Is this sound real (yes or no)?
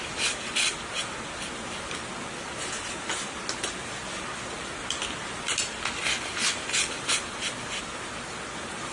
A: yes